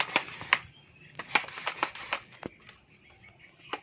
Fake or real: real